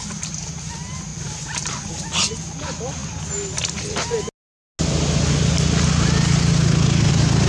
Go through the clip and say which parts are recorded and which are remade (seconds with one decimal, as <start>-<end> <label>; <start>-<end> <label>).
0.0-7.5 recorded